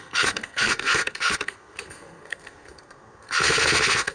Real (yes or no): no